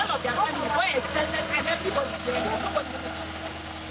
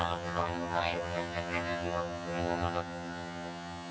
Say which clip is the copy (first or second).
second